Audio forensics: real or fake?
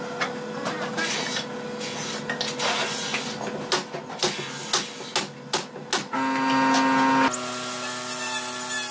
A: real